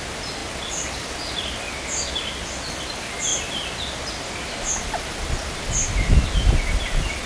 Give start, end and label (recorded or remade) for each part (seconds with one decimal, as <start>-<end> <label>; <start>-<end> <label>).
0.0-7.3 recorded